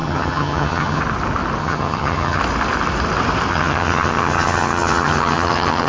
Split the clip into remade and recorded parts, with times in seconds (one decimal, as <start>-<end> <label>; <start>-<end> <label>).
0.0-1.0 remade; 1.0-1.6 recorded; 1.6-2.4 remade; 2.4-3.5 recorded; 3.5-5.9 remade